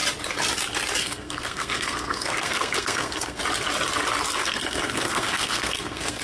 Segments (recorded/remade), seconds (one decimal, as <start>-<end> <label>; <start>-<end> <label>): 0.0-1.0 recorded; 1.0-3.4 remade; 3.4-4.4 recorded; 4.4-6.2 remade